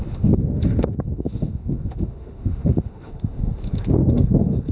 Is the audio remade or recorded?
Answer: remade